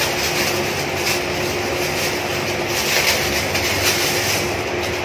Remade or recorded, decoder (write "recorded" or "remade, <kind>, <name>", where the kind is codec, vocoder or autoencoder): recorded